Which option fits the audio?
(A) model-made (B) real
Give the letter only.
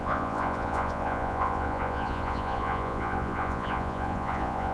A